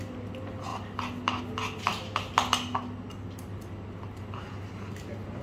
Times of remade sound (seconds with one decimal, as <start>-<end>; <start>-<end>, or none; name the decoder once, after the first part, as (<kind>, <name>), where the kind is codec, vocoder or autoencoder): none